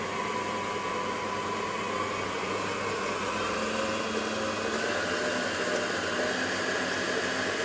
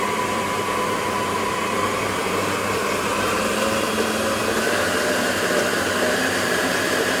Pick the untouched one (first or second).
first